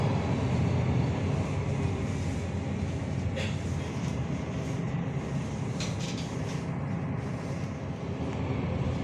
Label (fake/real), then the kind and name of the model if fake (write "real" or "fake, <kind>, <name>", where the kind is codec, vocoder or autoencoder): real